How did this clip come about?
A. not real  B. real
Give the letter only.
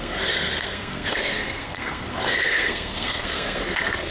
A